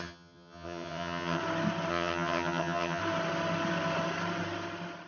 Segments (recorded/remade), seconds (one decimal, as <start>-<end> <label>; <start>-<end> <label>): 0.0-1.4 remade; 1.4-1.9 recorded; 1.9-3.0 remade; 3.0-5.1 recorded